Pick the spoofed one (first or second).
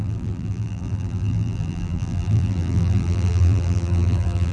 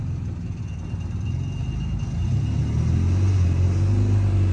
first